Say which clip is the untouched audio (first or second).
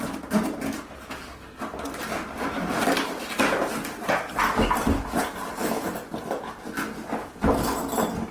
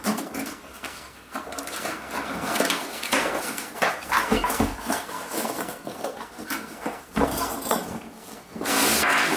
first